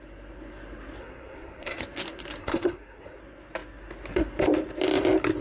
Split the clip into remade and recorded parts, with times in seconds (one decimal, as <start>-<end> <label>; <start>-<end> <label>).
0.0-1.0 recorded; 1.0-1.8 remade; 1.8-2.4 recorded; 2.4-3.2 remade; 3.2-5.4 recorded